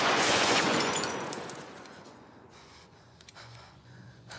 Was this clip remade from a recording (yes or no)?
yes